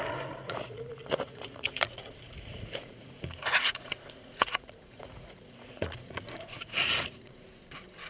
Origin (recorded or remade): remade